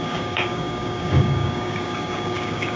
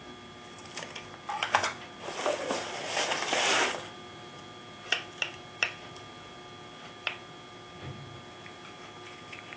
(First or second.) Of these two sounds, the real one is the second